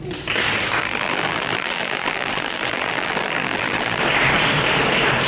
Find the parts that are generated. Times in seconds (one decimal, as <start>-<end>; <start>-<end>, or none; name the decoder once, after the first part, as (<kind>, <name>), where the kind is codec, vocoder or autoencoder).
0.8-4.0 (vocoder, BigVGAN v2)